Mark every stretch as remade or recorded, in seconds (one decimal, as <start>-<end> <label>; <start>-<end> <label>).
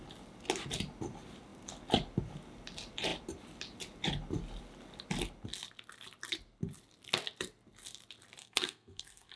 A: 0.0-8.4 recorded; 8.4-9.4 remade